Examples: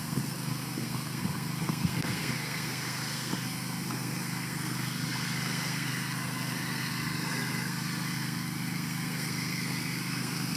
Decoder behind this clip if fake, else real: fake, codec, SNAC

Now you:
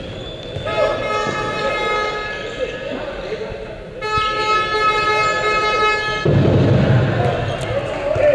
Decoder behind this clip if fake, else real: real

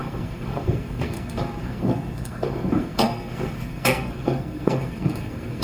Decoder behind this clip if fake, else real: fake, codec, SNAC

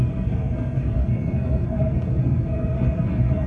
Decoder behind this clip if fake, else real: fake, codec, SNAC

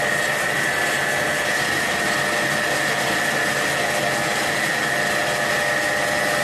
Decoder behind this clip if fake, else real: real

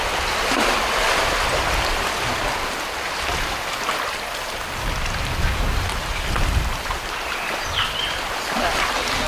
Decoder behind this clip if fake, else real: real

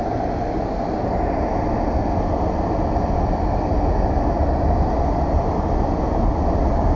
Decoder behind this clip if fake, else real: real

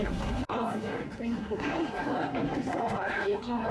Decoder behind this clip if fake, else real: fake, codec, SNAC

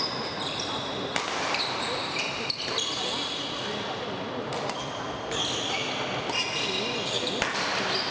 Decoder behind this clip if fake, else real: real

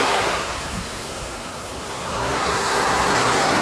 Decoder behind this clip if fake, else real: fake, codec, SNAC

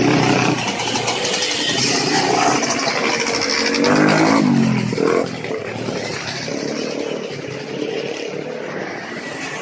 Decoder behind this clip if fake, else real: real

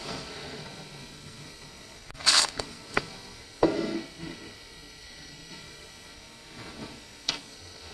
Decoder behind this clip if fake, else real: fake, codec, SNAC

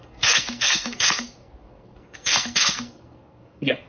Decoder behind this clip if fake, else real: fake, codec, SNAC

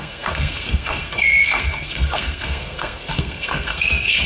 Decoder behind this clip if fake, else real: fake, codec, SNAC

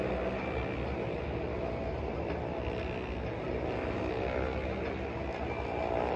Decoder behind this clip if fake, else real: real